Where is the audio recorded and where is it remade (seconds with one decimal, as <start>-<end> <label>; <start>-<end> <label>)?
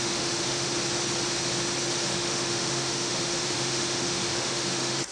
0.0-0.7 remade; 0.7-1.9 recorded; 1.9-5.1 remade